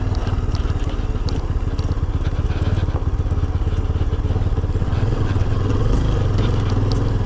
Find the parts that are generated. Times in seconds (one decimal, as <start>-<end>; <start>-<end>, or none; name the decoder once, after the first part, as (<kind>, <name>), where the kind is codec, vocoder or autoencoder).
4.8-6.0 (vocoder, WaveNeXt)